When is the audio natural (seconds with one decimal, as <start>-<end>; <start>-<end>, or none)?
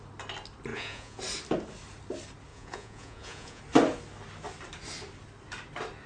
0.0-0.7; 1.2-2.5; 3.6-6.1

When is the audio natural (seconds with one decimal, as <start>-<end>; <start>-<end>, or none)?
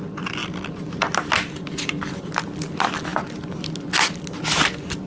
0.0-5.1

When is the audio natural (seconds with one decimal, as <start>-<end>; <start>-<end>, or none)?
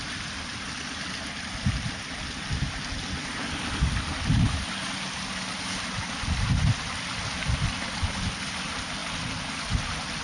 0.0-10.2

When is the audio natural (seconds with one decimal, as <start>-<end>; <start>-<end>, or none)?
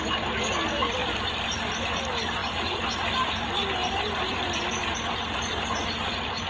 0.0-1.0; 1.9-3.8; 4.6-6.5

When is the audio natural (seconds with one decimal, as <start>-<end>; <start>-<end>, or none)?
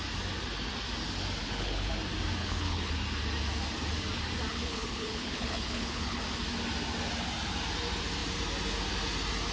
0.0-1.4; 1.9-2.4; 2.9-4.5; 6.2-9.5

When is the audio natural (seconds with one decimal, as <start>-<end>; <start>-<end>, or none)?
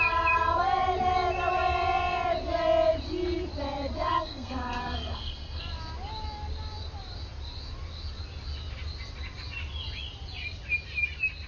0.0-4.1; 5.6-11.5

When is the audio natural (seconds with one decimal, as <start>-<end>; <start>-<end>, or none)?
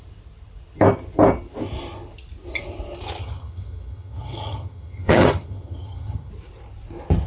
0.0-3.2; 6.3-7.3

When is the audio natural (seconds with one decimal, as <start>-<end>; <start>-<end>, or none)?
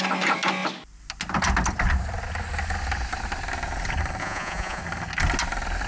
0.0-4.2; 4.8-5.9